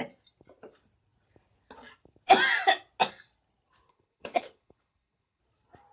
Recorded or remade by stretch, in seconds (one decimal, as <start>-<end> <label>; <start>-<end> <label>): 0.0-3.9 recorded; 3.9-5.4 remade; 5.4-5.9 recorded